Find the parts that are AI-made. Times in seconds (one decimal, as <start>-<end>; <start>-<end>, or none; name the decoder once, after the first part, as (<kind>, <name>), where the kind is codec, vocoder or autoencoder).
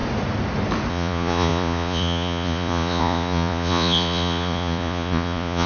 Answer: 0.9-5.7 (vocoder, Vocos)